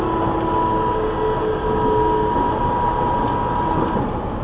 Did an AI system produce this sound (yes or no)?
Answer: no